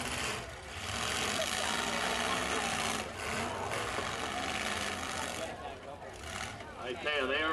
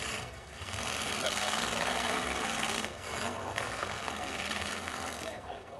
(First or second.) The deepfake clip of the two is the second